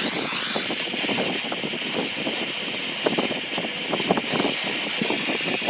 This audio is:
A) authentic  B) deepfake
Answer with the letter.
A